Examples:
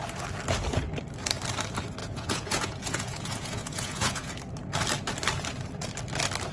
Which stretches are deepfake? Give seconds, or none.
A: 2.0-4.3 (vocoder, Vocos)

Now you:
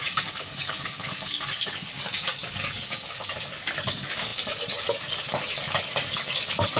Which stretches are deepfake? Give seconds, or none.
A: 0.0-6.8 (codec, DAC)

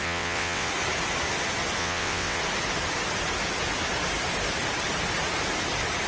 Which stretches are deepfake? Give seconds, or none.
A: 0.0-0.7 (vocoder, WaveNeXt); 1.8-2.4

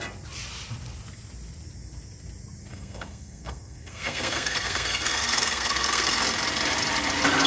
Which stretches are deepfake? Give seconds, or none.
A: 2.7-6.2 (codec, SNAC)